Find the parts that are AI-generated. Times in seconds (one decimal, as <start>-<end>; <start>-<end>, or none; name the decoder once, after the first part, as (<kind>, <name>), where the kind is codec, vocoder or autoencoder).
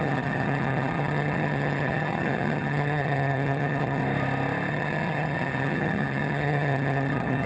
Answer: 0.0-4.0 (vocoder, HiFi-GAN); 4.7-7.5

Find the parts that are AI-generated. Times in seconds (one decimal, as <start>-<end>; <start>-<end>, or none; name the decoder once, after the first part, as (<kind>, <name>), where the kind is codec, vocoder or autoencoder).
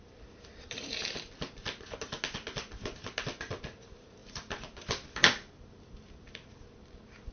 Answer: none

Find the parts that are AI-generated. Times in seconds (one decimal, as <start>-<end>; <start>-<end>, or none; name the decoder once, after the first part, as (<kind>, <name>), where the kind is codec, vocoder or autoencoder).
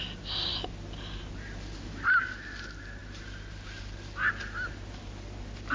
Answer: none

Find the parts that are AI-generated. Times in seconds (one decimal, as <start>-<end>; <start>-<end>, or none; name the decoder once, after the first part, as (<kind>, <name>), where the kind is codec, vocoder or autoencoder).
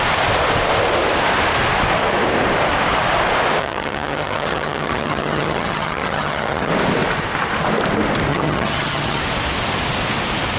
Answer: 3.6-6.7 (vocoder, HiFi-GAN); 8.3-9.2